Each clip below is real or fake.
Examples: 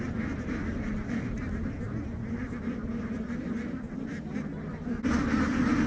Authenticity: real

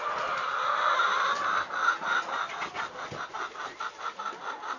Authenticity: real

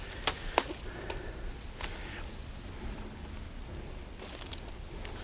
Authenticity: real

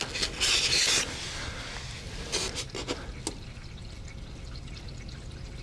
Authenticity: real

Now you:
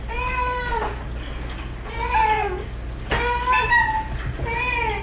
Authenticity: real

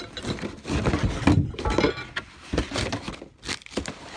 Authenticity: real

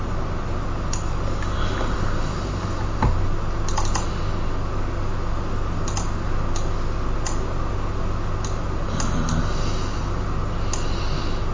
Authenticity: real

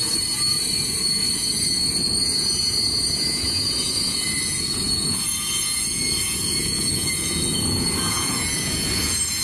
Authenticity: fake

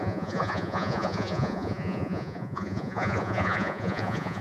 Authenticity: fake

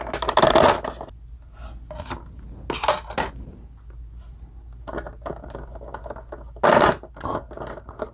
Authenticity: real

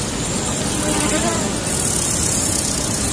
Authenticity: real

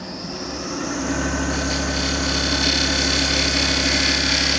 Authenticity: real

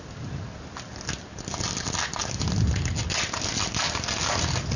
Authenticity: real